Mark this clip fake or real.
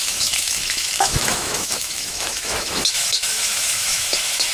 fake